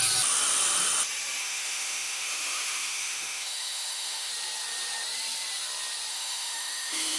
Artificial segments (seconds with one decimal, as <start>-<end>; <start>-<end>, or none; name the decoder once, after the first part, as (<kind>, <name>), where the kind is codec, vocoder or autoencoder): 1.4-4.3 (autoencoder, DAC-VAE); 6.1-7.2